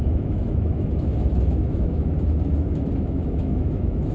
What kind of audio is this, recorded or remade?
remade